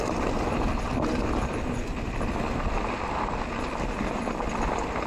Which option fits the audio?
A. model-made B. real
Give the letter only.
B